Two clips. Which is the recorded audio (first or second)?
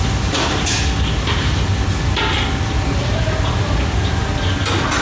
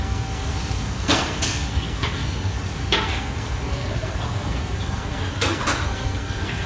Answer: first